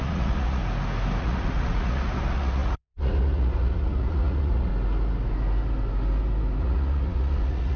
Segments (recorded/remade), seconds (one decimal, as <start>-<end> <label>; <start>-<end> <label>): 0.0-0.6 remade; 0.6-1.2 recorded; 1.2-4.7 remade; 4.7-6.6 recorded; 6.6-7.8 remade